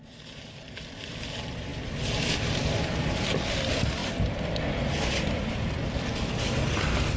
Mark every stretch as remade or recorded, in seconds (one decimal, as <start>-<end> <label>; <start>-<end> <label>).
0.0-7.2 recorded